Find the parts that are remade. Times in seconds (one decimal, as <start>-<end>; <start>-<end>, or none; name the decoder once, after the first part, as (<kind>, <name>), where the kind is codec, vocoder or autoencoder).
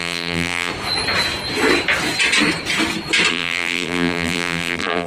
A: 0.0-0.7 (vocoder, BigVGAN v2); 3.3-5.1